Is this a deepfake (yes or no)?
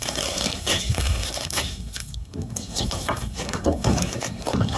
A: yes